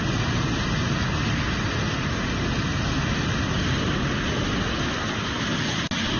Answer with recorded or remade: recorded